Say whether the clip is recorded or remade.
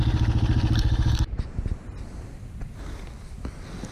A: recorded